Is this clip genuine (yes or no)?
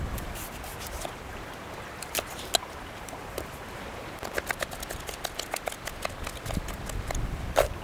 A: yes